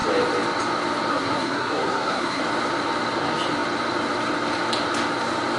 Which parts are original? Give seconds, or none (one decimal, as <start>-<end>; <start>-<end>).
0.0-1.1; 2.4-5.6